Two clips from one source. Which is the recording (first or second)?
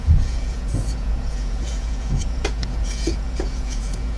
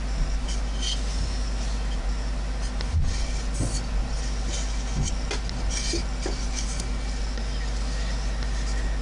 second